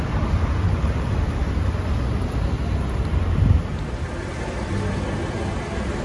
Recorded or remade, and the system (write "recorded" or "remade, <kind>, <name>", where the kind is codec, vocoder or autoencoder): recorded